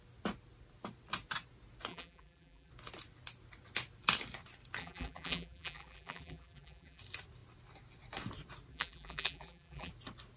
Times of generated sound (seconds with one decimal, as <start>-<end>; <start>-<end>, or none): 1.9-2.7; 4.8-7.0; 8.7-9.9